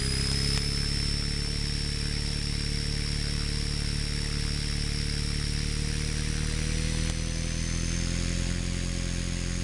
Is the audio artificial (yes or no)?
no